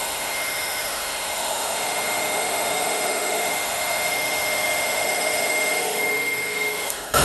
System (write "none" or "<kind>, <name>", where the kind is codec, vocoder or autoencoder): autoencoder, DAC-VAE